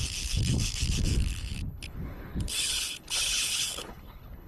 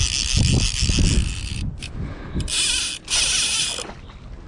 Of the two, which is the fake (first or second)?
first